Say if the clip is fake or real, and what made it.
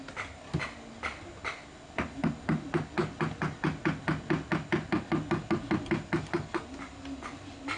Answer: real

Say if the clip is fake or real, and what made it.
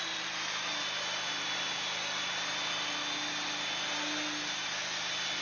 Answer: real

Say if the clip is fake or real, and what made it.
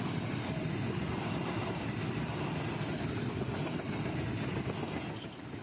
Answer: real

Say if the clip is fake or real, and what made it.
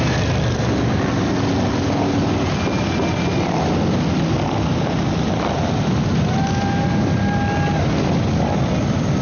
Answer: real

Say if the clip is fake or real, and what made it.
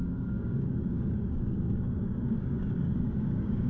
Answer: fake, codec, DAC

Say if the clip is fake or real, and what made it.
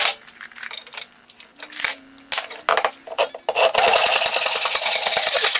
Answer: real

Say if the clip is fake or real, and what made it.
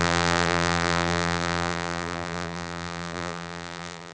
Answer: fake, vocoder, BigVGAN v2